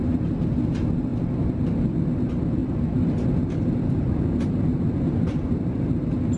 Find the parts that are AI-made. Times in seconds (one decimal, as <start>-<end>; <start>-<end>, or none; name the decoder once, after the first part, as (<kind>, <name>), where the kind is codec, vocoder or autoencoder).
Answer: 1.1-1.9 (vocoder, BigVGAN v2)